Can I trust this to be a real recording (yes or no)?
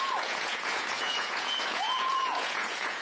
no